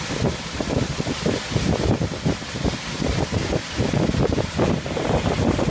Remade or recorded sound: recorded